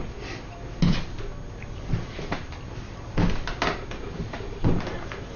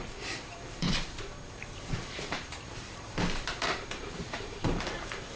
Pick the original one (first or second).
first